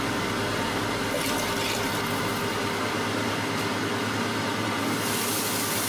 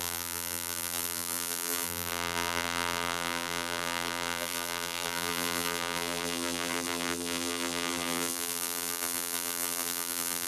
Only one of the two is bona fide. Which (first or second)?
first